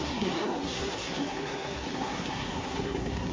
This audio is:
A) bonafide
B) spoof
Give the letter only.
B